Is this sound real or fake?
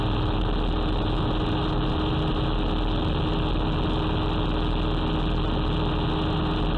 real